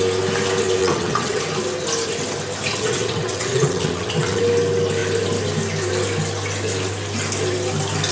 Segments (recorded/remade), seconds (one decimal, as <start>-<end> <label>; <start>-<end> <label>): 0.0-0.8 recorded; 0.8-1.4 remade; 1.4-2.7 recorded; 2.7-4.4 remade; 4.4-8.1 recorded